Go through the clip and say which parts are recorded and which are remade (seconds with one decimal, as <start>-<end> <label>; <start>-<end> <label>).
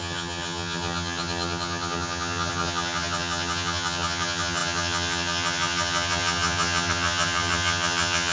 0.0-8.3 remade